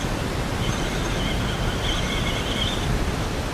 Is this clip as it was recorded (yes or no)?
no